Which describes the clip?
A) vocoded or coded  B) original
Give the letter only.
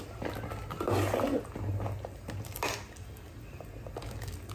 B